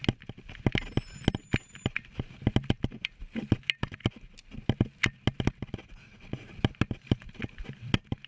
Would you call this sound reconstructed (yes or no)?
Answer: no